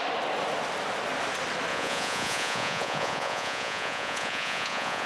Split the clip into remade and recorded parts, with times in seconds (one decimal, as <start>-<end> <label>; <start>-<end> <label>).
0.0-1.7 recorded; 1.7-5.1 remade